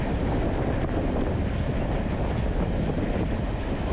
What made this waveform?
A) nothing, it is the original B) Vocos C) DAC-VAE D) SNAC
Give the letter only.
A